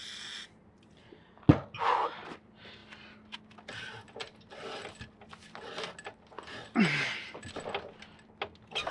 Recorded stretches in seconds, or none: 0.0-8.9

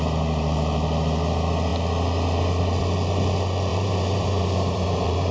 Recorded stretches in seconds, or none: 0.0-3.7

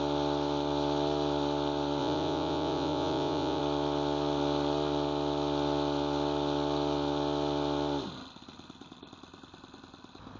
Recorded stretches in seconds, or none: 0.0-2.0; 3.6-10.4

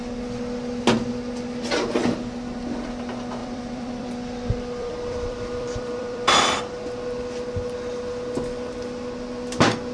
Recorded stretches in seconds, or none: 0.0-3.4; 6.6-9.9

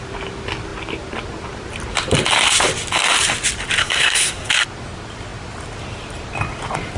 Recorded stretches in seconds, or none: 0.0-3.8; 4.5-7.0